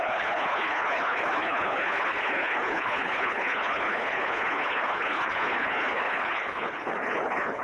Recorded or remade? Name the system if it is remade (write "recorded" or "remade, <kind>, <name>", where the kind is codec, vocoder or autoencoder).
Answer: remade, codec, HILCodec